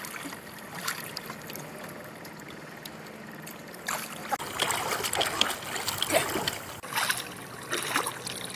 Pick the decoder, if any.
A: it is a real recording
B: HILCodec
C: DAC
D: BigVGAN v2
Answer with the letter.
A